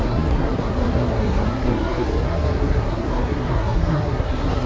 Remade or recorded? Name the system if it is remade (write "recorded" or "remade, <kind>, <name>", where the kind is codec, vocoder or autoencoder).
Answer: remade, codec, SNAC